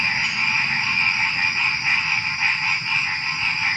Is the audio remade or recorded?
recorded